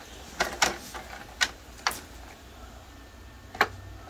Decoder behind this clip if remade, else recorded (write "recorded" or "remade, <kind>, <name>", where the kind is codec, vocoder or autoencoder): recorded